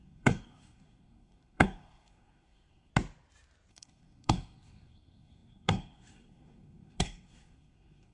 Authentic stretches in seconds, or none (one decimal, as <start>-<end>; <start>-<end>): 2.9-3.7